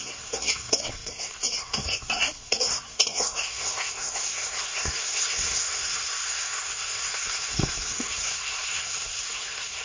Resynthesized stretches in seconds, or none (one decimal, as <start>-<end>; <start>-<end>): 0.0-9.8